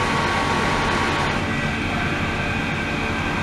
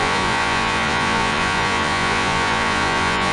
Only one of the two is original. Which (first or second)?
first